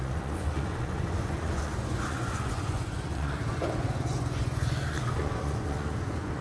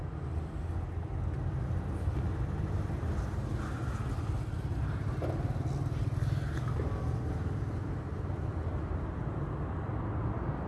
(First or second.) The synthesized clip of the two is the first